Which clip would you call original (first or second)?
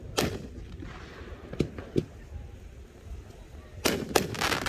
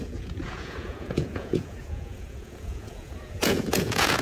first